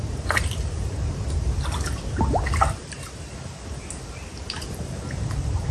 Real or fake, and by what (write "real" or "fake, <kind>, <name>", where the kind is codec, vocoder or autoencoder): real